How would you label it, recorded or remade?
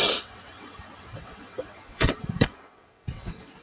remade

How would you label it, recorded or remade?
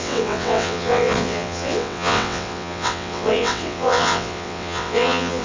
remade